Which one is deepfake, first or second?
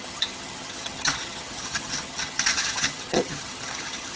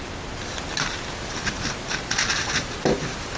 first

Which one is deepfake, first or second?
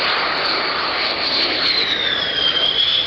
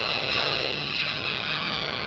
second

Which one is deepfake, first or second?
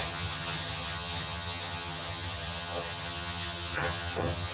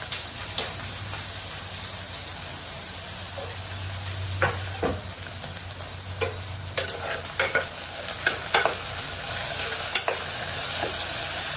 first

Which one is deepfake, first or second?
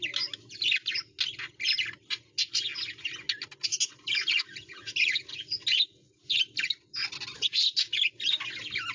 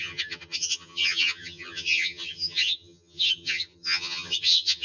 second